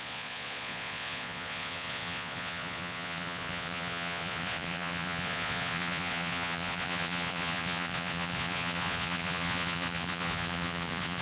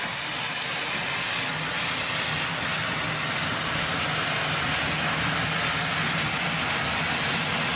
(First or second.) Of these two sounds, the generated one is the first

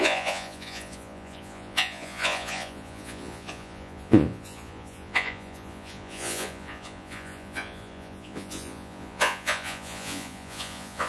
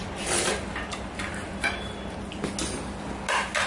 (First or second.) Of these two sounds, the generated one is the first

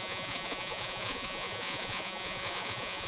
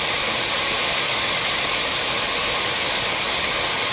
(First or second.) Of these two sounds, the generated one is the first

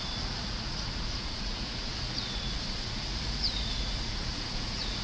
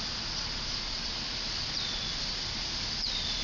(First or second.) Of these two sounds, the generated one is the first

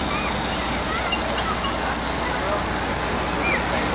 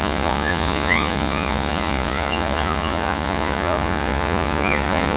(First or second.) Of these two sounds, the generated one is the second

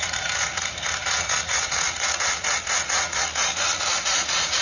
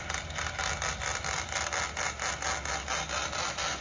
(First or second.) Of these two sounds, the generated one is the first